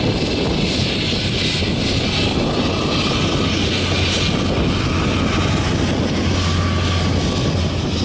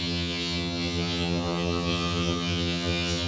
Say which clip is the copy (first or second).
second